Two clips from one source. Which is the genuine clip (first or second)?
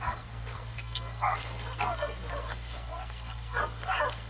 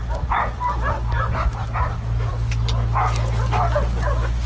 second